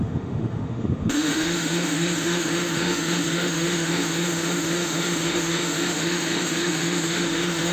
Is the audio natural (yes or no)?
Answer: no